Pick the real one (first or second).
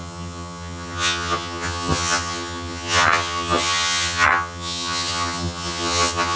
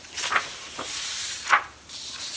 second